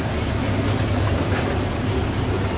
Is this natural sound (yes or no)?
yes